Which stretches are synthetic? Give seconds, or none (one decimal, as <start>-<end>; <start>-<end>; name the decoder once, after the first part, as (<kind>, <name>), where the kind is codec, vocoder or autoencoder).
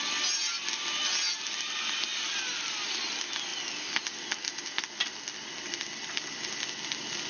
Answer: none